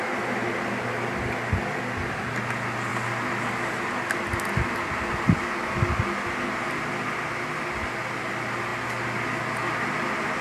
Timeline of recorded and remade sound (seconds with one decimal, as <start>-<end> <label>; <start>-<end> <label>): 0.0-10.4 recorded